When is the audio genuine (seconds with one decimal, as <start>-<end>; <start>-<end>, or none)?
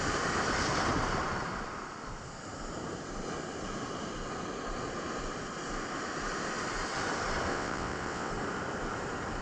0.0-7.5; 8.3-9.4